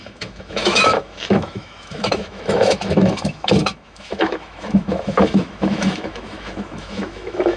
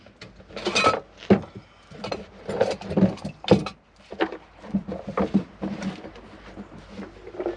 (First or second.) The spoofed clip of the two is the first